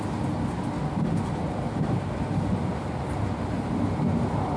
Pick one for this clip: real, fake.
real